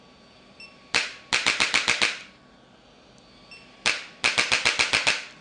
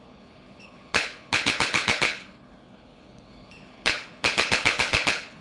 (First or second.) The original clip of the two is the first